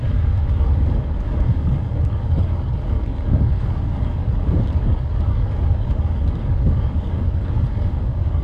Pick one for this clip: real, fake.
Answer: fake